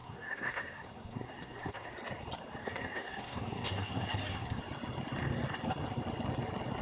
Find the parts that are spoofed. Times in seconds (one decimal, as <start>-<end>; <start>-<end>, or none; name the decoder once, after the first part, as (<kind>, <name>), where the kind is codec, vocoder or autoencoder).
0.0-1.9 (codec, SNAC); 2.6-4.6